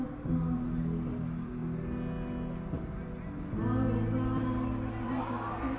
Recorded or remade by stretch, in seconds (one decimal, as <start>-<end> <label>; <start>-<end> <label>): 0.0-5.8 recorded